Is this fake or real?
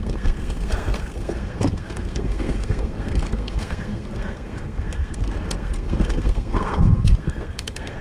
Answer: fake